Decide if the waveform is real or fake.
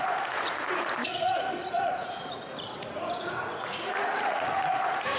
fake